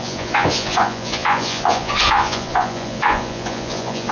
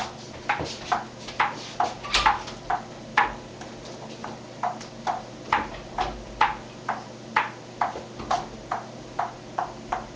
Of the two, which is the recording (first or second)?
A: second